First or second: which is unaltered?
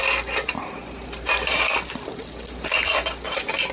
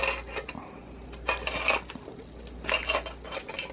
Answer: second